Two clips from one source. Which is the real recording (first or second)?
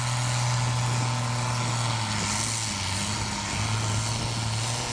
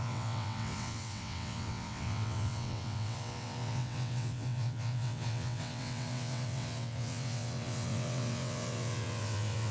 first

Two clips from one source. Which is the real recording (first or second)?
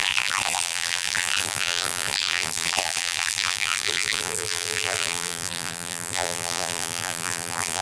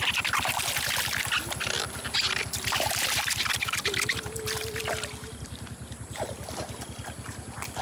second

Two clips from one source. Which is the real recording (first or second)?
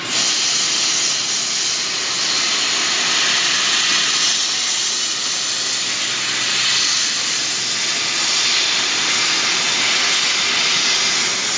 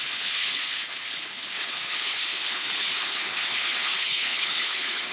first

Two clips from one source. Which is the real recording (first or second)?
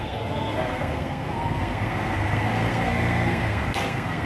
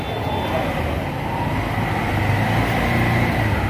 second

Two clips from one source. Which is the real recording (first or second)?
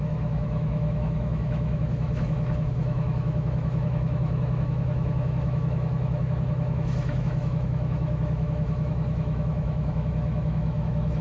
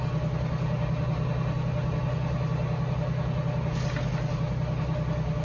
second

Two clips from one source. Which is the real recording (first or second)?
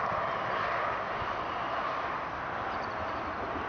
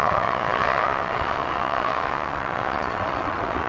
first